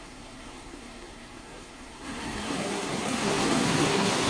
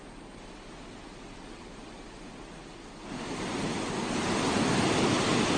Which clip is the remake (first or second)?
first